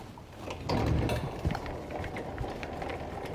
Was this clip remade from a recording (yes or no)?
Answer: no